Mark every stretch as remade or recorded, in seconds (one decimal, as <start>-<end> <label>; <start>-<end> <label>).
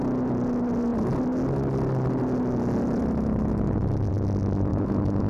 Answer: 0.0-4.7 recorded; 4.7-5.3 remade